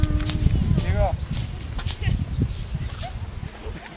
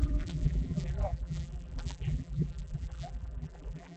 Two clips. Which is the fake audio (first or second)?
second